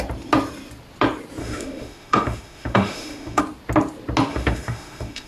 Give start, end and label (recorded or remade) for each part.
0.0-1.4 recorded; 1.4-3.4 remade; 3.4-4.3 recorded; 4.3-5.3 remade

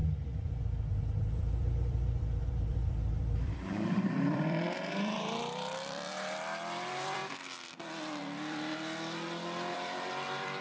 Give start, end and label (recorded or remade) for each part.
0.0-7.2 remade; 7.2-8.2 recorded; 8.2-10.6 remade

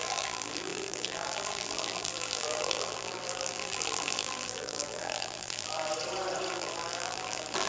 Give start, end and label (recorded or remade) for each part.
0.0-5.9 remade; 5.9-6.5 recorded; 6.5-7.7 remade

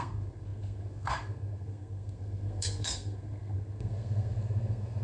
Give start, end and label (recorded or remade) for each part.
0.0-5.0 remade

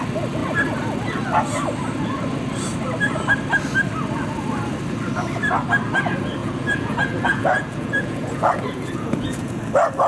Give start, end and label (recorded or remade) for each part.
0.0-6.4 recorded; 6.4-9.6 remade; 9.6-10.1 recorded

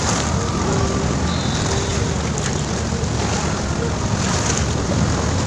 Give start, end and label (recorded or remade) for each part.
0.0-5.5 recorded

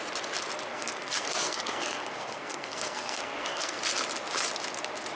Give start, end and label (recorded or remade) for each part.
0.0-0.7 recorded; 0.7-3.8 remade; 3.8-5.2 recorded